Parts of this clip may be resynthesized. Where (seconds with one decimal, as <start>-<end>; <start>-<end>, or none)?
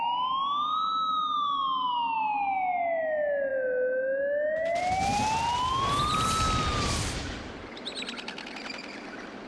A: none